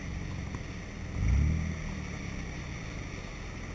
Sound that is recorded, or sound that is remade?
recorded